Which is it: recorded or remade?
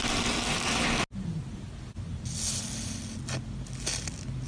recorded